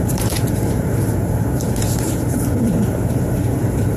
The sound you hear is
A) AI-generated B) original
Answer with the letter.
A